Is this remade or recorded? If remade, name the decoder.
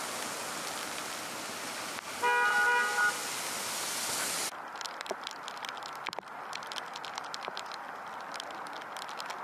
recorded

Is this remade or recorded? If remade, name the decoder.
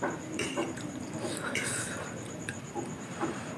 remade, vocoder, BigVGAN v2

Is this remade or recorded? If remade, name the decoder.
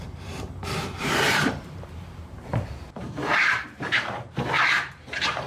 remade, vocoder, BigVGAN v2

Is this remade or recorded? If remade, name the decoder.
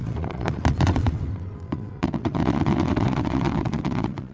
remade, vocoder, WaveNeXt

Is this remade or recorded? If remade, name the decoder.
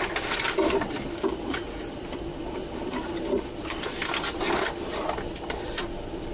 remade, vocoder, BigVGAN v2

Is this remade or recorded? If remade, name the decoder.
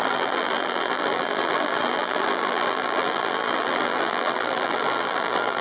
remade, vocoder, BigVGAN v2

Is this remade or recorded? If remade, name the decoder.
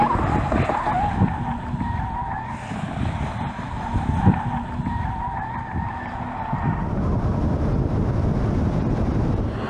recorded